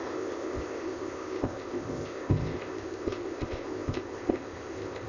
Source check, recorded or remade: remade